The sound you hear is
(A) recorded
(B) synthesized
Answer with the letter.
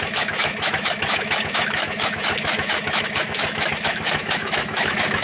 B